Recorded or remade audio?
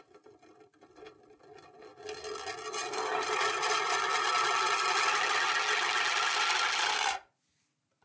recorded